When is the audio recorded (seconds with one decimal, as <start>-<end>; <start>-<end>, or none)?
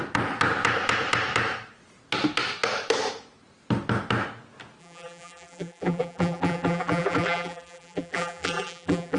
0.0-4.8